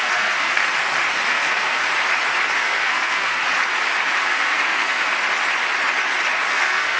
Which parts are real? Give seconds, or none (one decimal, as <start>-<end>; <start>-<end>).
0.6-1.3; 1.8-2.6; 3.4-4.2; 5.0-6.5